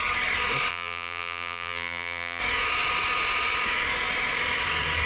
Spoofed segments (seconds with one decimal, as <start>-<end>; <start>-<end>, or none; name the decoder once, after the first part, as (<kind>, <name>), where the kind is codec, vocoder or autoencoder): 0.7-2.4 (vocoder, BigVGAN v2)